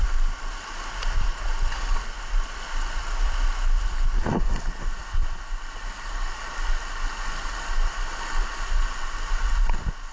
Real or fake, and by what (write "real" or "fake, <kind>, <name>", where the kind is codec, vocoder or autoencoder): real